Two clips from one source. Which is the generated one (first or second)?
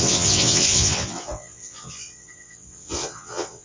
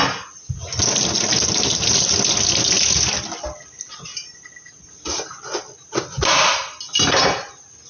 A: first